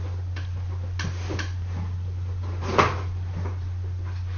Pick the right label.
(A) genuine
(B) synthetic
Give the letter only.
A